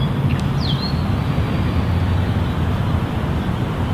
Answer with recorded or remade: recorded